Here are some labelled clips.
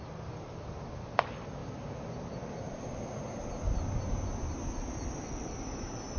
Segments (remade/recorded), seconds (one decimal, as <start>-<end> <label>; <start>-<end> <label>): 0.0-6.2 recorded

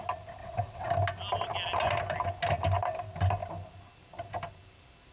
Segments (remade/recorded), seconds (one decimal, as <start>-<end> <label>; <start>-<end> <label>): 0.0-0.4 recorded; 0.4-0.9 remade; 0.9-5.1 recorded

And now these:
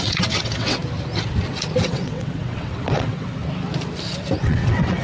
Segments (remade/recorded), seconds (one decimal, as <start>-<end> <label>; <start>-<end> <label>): 0.0-0.8 remade; 0.8-1.8 recorded; 1.8-3.4 remade; 3.4-4.4 recorded; 4.4-5.0 remade